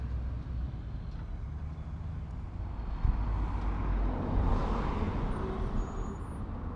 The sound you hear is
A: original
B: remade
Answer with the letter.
A